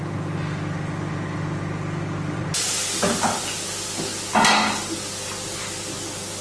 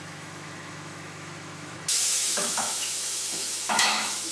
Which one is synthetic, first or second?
second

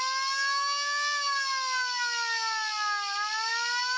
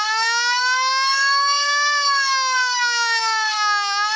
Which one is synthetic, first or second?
second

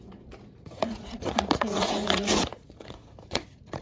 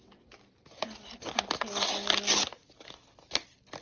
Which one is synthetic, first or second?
first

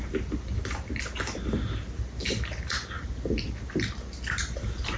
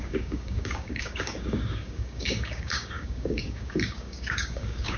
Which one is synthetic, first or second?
second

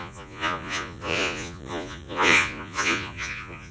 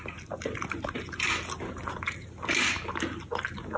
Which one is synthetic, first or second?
first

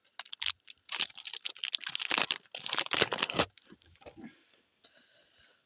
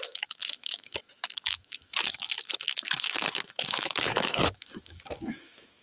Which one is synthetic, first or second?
second